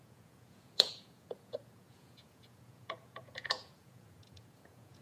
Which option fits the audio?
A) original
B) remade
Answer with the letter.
B